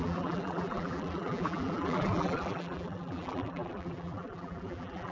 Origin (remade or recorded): remade